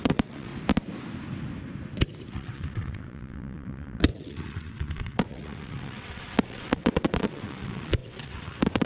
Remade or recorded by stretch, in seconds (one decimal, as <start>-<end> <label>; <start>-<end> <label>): 0.0-0.5 remade; 0.5-2.3 recorded; 2.3-8.9 remade

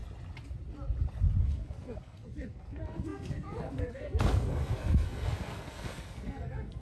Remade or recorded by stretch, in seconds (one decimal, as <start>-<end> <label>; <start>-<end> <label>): 0.0-1.4 recorded; 1.4-6.8 remade

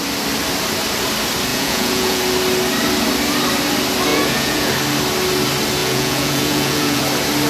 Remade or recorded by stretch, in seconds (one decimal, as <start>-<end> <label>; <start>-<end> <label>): 0.0-1.5 recorded; 1.5-2.2 remade; 2.2-4.1 recorded; 4.1-4.7 remade; 4.7-5.8 recorded; 5.8-7.0 remade; 7.0-7.5 recorded

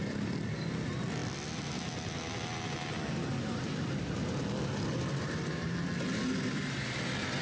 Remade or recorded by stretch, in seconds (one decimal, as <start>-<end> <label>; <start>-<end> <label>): 0.0-7.4 recorded

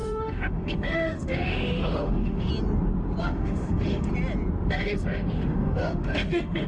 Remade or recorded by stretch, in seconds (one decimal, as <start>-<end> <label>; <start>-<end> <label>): 0.0-2.5 remade; 2.5-3.2 recorded; 3.2-4.1 remade; 4.1-4.7 recorded; 4.7-6.7 remade

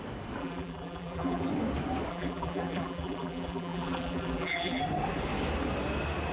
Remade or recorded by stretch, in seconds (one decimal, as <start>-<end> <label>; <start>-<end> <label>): 0.0-0.4 recorded; 0.4-1.5 remade; 1.5-2.1 recorded; 2.1-4.8 remade; 4.8-6.3 recorded